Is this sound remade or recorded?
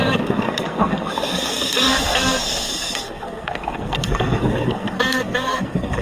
remade